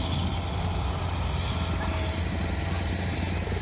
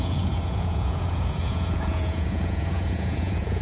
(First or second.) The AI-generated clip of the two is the second